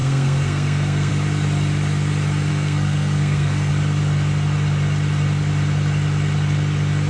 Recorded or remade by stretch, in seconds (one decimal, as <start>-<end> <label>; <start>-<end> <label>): 0.0-1.1 remade; 1.1-2.5 recorded; 2.5-3.7 remade; 3.7-7.1 recorded